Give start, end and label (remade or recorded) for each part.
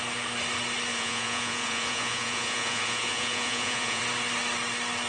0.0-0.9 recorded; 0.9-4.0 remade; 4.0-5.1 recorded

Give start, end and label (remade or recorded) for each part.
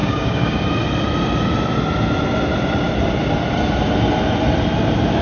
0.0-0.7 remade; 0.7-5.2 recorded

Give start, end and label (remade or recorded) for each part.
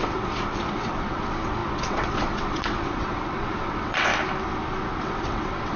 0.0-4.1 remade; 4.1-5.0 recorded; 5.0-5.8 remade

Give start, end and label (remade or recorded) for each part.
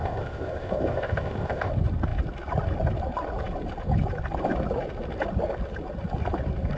0.0-1.7 remade; 1.7-6.8 recorded